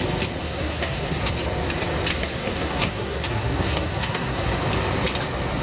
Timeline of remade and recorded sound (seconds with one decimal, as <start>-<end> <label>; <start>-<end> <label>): 0.0-0.4 recorded; 0.4-1.3 remade; 1.3-2.1 recorded; 2.1-4.6 remade; 4.6-5.6 recorded